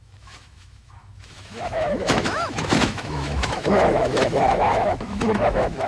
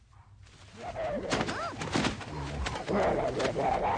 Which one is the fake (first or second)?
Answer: first